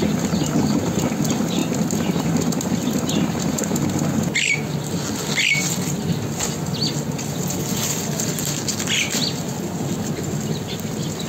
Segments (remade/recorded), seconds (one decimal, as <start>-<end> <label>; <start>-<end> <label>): 0.0-11.3 recorded